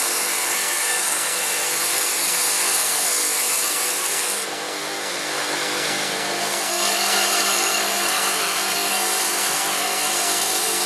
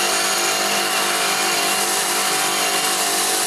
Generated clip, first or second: first